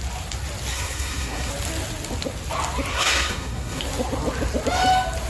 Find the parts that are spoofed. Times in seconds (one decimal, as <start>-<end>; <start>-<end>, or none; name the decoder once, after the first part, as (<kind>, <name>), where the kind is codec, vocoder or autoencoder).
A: 0.7-1.5 (codec, SNAC); 2.9-3.8